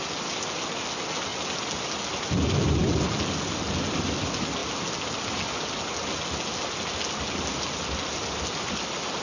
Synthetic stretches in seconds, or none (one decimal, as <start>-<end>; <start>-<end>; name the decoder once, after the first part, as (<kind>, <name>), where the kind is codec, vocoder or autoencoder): none